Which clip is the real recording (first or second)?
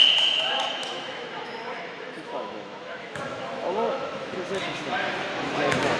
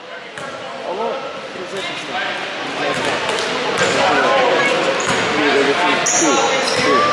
second